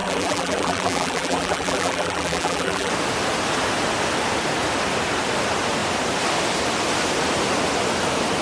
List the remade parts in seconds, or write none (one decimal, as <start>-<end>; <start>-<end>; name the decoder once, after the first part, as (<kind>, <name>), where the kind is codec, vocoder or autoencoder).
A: 0.0-2.9 (vocoder, BigVGAN v2)